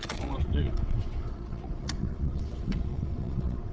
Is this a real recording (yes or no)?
no